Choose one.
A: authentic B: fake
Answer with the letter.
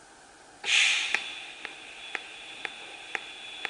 A